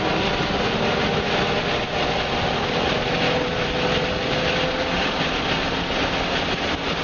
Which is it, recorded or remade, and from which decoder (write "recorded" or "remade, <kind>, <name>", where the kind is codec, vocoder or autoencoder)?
recorded